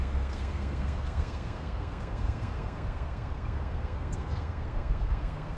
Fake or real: fake